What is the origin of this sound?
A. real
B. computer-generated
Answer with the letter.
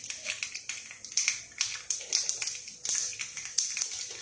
A